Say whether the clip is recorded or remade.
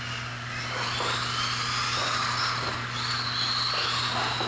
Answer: recorded